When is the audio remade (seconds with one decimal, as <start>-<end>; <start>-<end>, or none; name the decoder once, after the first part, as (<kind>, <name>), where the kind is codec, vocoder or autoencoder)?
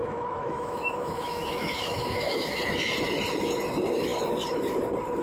0.0-2.6 (autoencoder, DAC-VAE)